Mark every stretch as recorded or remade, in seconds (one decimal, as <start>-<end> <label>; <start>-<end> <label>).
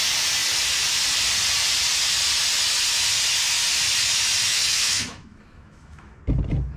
0.0-4.5 recorded; 4.5-6.2 remade; 6.2-6.8 recorded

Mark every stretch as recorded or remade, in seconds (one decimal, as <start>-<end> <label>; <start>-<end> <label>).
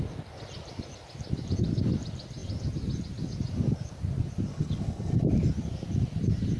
0.0-4.5 recorded; 4.5-5.2 remade; 5.2-6.6 recorded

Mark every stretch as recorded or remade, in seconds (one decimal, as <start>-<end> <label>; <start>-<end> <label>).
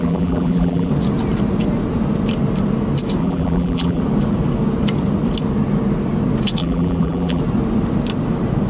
0.0-0.9 remade; 0.9-3.2 recorded; 3.2-4.0 remade; 4.0-6.6 recorded; 6.6-7.4 remade; 7.4-8.7 recorded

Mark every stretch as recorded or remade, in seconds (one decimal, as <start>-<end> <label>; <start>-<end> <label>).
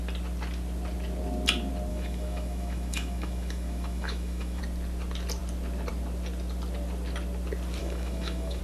0.0-1.9 recorded; 1.9-4.6 remade; 4.6-7.8 recorded; 7.8-8.6 remade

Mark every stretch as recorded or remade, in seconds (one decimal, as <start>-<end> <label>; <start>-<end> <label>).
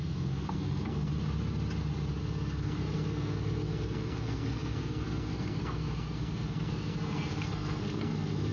0.0-1.1 remade; 1.1-2.2 recorded; 2.2-8.5 remade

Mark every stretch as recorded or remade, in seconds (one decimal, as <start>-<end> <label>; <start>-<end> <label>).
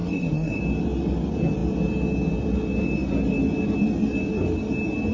0.0-0.6 remade; 0.6-5.1 recorded